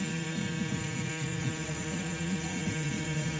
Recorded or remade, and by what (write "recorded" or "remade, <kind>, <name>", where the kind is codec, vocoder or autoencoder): remade, vocoder, Vocos